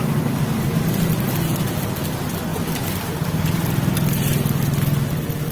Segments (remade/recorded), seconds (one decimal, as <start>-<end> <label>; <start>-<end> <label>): 0.0-5.5 recorded